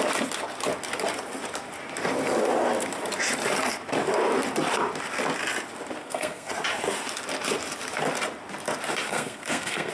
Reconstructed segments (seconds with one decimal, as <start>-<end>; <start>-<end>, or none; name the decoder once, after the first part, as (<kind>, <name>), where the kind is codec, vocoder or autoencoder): 6.0-6.5 (codec, SNAC); 9.1-9.9